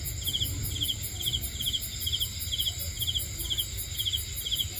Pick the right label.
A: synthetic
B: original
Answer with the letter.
B